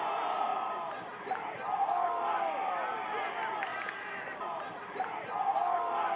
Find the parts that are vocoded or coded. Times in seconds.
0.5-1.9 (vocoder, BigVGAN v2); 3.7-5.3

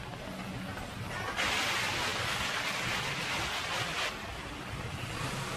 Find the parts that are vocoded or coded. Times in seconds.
none

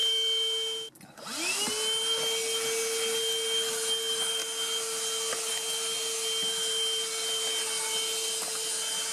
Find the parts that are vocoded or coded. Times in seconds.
none

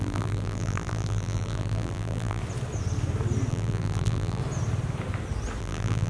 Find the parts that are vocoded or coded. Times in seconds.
0.0-2.4 (vocoder, BigVGAN v2); 3.5-4.4; 5.6-6.1

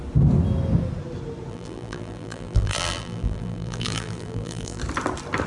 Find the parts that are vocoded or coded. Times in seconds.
1.5-4.8 (vocoder, BigVGAN v2)

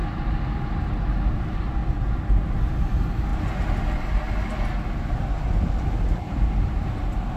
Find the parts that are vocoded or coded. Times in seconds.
1.3-1.8 (vocoder, BigVGAN v2); 2.5-3.3; 5.7-7.4

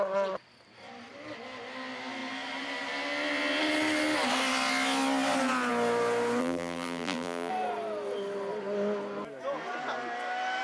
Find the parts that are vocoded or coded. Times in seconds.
6.4-7.5 (vocoder, BigVGAN v2)

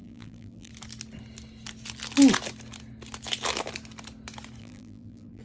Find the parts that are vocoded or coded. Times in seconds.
0.0-0.7 (vocoder, BigVGAN v2); 4.6-5.4